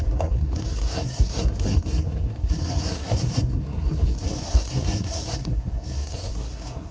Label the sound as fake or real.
fake